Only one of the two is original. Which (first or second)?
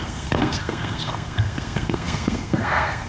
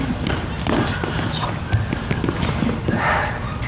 second